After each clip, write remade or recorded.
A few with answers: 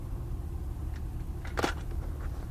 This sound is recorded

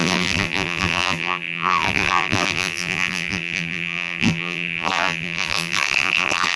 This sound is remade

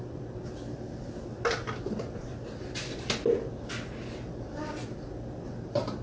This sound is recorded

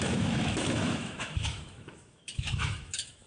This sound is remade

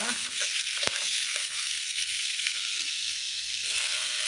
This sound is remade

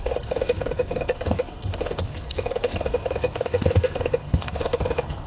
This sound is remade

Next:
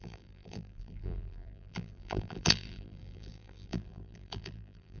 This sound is remade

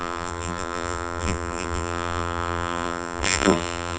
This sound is remade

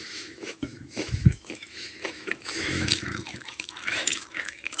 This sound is remade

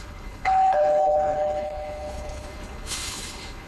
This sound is remade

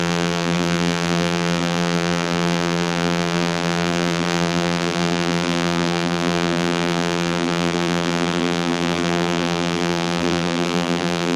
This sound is remade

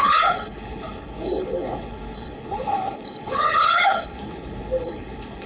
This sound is remade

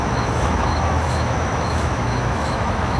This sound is remade